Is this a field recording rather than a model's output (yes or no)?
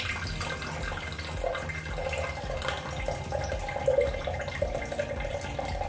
yes